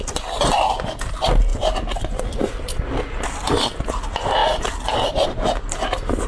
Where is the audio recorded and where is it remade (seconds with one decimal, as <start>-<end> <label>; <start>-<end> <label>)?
0.0-6.3 recorded